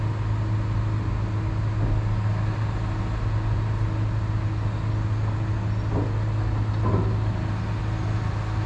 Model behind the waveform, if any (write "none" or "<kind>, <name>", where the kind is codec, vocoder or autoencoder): none